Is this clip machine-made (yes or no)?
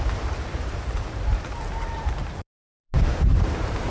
yes